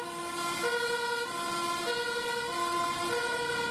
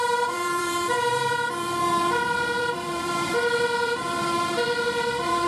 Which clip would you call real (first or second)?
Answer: first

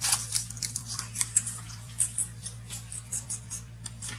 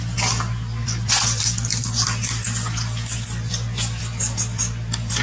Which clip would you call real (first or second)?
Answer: second